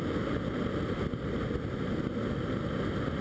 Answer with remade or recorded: recorded